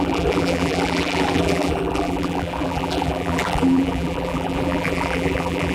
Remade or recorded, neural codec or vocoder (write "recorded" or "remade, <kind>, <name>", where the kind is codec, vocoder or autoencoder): remade, vocoder, BigVGAN v2